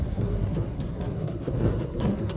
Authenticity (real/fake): fake